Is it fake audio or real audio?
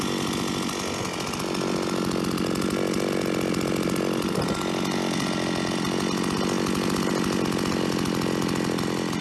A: real